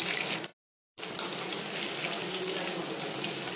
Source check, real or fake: fake